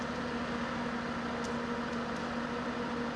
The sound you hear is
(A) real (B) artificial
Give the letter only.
A